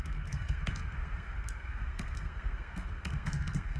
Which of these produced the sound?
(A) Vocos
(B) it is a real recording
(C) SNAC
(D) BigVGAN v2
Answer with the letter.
C